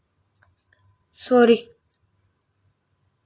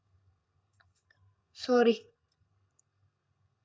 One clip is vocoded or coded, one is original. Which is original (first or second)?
first